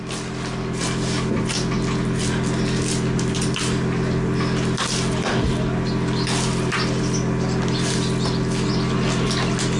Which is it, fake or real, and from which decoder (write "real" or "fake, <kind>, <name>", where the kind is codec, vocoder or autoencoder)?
real